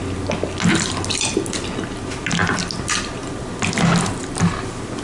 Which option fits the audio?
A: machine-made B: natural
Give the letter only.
B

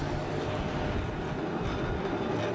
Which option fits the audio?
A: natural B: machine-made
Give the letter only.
A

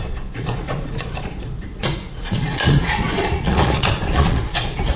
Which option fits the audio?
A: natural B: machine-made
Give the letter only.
B